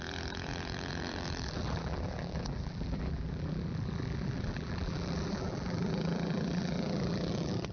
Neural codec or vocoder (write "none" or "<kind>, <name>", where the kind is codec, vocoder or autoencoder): vocoder, BigVGAN v2